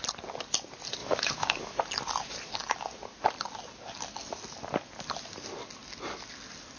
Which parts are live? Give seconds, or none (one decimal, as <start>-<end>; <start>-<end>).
0.0-1.0; 1.8-6.8